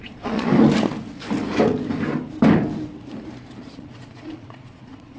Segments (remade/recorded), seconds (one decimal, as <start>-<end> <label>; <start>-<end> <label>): 0.0-0.5 remade; 0.5-3.6 recorded; 3.6-5.2 remade